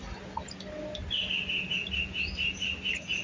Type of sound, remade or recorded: recorded